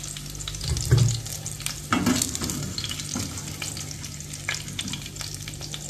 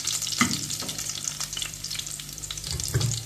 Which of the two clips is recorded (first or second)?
first